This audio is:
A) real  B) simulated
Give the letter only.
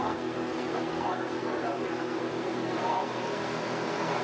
B